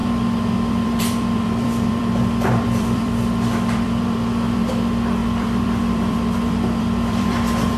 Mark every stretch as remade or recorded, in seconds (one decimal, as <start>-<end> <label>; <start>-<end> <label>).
0.0-4.7 remade; 4.7-5.2 recorded; 5.2-7.8 remade